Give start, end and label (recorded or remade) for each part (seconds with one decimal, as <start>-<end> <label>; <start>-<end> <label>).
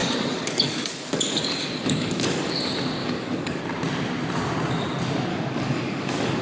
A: 0.0-2.5 remade; 2.5-3.0 recorded; 3.0-3.6 remade; 3.6-5.3 recorded; 5.3-6.4 remade